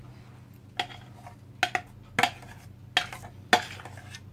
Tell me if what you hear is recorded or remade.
recorded